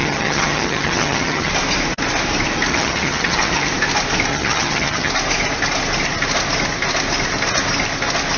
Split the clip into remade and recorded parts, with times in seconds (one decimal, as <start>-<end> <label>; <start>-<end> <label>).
0.0-1.5 remade; 1.5-2.7 recorded; 2.7-3.7 remade; 3.7-4.3 recorded; 4.3-5.1 remade; 5.1-8.4 recorded